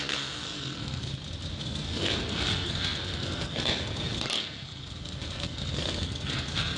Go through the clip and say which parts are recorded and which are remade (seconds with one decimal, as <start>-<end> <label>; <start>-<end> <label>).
0.0-1.1 remade; 1.1-1.6 recorded; 1.6-6.8 remade